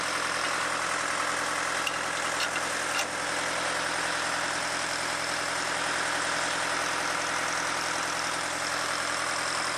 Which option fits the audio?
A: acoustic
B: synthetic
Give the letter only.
A